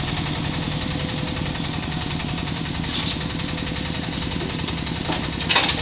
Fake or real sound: real